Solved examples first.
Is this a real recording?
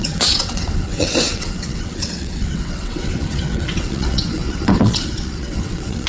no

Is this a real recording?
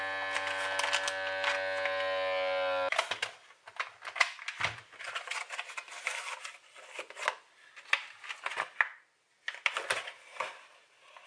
yes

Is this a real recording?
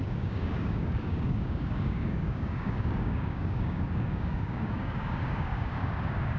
no